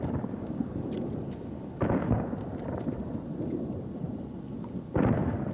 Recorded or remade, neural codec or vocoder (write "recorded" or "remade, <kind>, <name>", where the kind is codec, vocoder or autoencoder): recorded